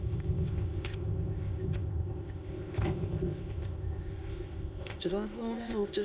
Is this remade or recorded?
remade